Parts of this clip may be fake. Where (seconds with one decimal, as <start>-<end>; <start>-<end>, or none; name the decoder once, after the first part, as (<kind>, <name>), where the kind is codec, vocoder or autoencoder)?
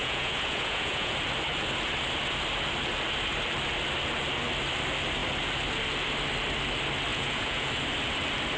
0.0-1.1 (vocoder, Vocos); 7.1-7.7